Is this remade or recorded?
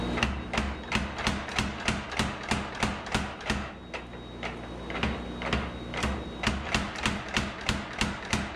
recorded